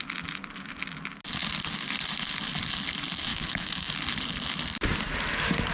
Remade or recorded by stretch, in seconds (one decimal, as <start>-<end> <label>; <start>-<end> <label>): 0.0-3.3 recorded; 3.3-3.9 remade; 3.9-5.7 recorded